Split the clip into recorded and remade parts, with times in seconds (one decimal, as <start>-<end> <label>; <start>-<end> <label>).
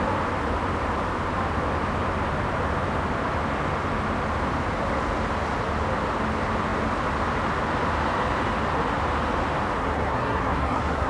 0.0-9.8 recorded; 9.8-11.1 remade